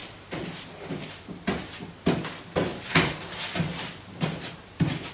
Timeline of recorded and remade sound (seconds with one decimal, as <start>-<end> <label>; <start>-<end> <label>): 0.0-5.1 recorded